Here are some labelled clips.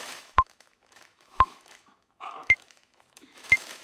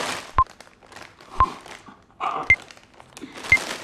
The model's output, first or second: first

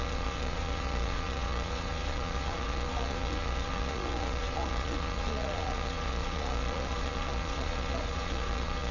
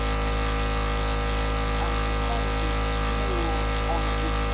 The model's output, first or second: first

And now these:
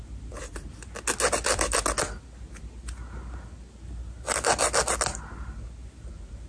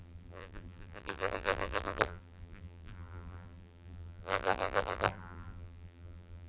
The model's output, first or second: second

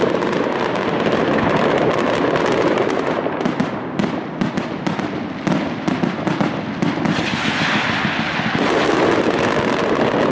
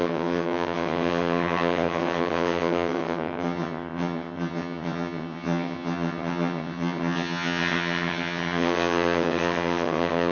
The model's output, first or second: second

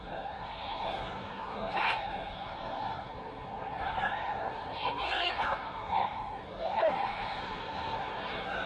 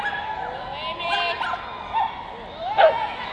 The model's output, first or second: first